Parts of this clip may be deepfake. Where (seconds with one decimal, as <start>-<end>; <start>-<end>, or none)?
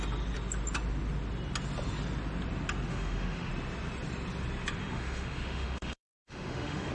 2.9-3.5; 4.8-6.9